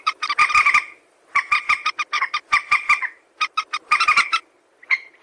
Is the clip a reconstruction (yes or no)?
no